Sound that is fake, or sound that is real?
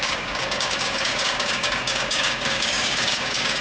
fake